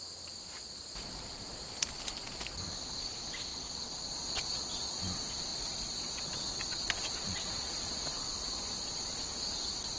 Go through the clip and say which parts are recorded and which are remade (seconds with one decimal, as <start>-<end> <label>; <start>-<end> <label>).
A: 0.0-3.5 recorded; 3.5-5.0 remade; 5.0-5.5 recorded; 5.5-8.1 remade; 8.1-10.0 recorded